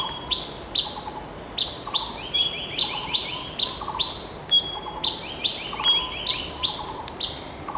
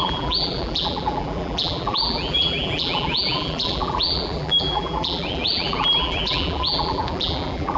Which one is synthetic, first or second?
second